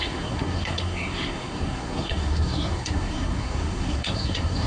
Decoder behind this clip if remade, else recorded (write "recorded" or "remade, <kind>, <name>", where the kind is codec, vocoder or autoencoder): remade, codec, SNAC